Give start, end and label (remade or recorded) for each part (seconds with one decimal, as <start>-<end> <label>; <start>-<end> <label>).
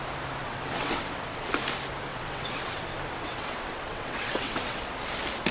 0.0-0.4 recorded; 0.4-1.5 remade; 1.5-2.1 recorded; 2.1-4.8 remade; 4.8-5.5 recorded